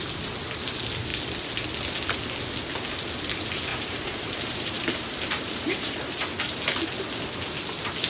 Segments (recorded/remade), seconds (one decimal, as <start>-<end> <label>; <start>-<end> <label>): 0.0-3.7 recorded; 3.7-6.6 remade; 6.6-8.1 recorded